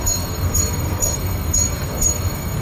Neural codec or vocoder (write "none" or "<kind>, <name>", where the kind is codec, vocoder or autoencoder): codec, SNAC